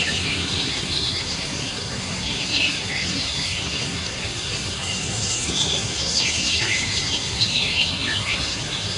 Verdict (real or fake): fake